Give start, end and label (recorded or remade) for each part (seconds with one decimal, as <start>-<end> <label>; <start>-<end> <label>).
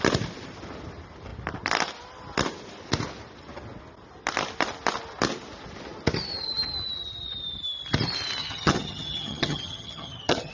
0.0-8.4 recorded; 8.4-10.5 remade